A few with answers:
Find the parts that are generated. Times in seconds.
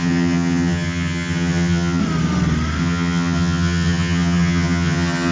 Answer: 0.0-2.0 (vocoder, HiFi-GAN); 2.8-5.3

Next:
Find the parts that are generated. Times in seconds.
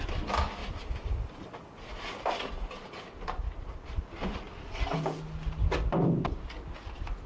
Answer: none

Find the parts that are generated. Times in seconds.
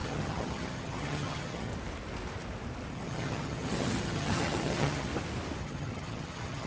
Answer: 0.0-1.7 (vocoder, HiFi-GAN); 2.9-5.1; 5.6-6.7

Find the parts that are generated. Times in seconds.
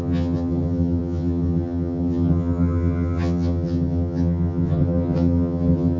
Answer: 0.0-6.0 (vocoder, HiFi-GAN)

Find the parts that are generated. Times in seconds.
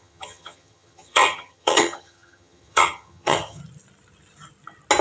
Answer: 0.0-3.6 (vocoder, HiFi-GAN)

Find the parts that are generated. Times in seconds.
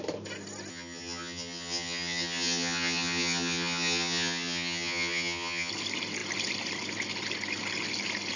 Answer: 0.7-5.7 (vocoder, HiFi-GAN)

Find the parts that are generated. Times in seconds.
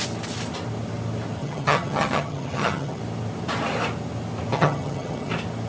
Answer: 1.4-3.0 (vocoder, HiFi-GAN); 4.5-5.3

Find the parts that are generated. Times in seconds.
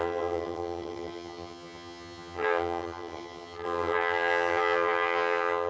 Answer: 0.0-5.7 (vocoder, HiFi-GAN)